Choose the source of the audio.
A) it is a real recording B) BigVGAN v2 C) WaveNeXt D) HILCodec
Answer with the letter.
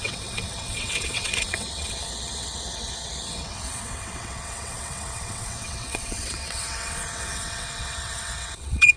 C